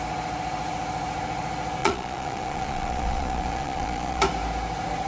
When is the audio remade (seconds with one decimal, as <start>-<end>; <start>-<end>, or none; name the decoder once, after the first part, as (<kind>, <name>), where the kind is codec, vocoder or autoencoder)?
1.8-4.2 (vocoder, Vocos)